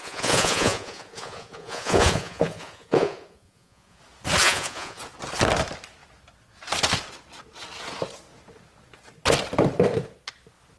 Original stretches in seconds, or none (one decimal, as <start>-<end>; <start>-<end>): 4.0-4.4; 5.0-10.8